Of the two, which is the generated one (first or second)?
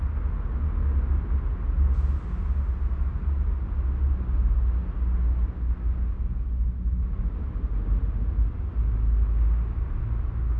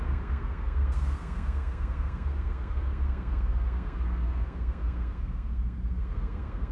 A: second